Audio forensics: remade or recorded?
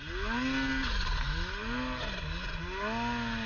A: recorded